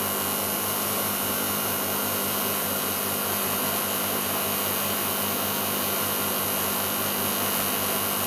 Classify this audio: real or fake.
real